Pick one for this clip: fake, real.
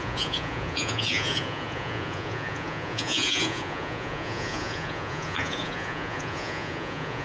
fake